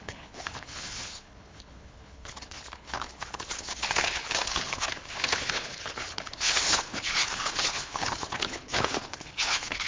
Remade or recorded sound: remade